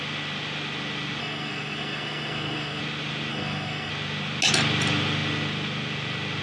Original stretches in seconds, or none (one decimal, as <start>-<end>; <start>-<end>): 0.0-1.2; 2.8-3.3; 3.9-6.4